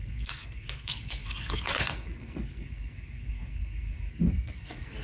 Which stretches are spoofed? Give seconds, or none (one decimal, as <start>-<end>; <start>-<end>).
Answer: 0.0-5.0